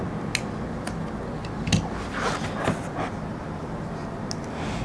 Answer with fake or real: real